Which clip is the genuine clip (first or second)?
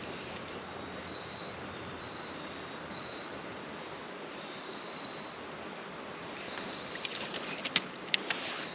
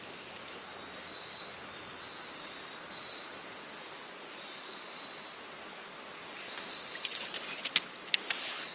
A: second